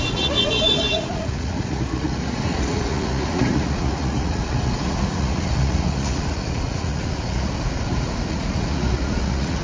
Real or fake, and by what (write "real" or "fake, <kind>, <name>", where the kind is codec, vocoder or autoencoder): fake, vocoder, Vocos